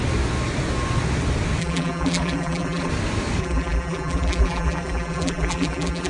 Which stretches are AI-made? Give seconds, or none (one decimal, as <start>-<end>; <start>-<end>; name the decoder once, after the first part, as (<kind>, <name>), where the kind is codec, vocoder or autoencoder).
1.6-2.9 (vocoder, BigVGAN v2); 3.4-6.1